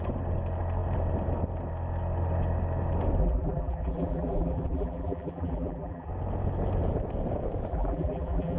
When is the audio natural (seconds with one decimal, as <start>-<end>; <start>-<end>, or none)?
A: 0.0-3.2; 6.1-7.7